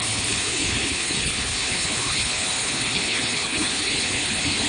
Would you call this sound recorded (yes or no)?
no